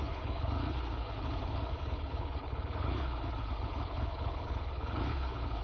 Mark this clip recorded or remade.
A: remade